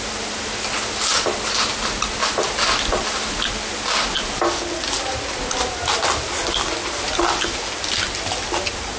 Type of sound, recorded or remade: recorded